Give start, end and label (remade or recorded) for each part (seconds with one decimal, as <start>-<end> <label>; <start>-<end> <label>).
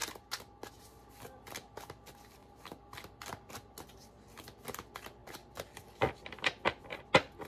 0.0-7.5 recorded